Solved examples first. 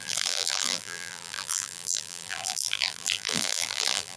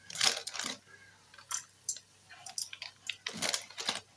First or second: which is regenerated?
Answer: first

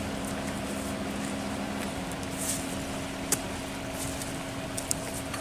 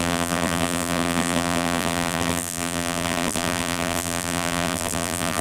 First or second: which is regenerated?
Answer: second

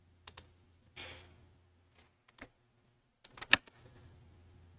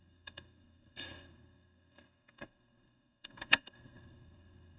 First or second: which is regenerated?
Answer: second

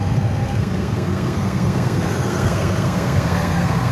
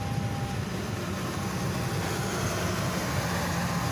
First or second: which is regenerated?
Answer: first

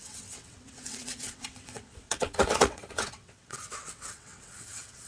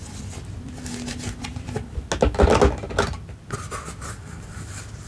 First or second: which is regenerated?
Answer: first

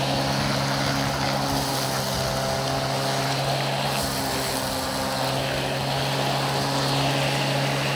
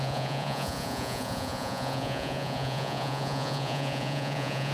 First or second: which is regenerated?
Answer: second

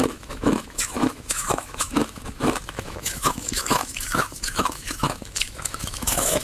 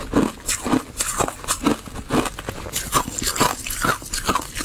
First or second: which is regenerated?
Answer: first